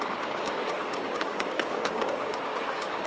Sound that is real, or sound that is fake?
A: fake